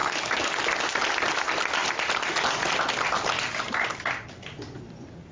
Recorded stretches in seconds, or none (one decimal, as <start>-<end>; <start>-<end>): 0.6-5.3